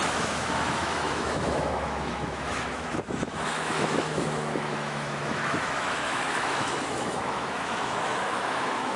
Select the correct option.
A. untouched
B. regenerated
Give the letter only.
B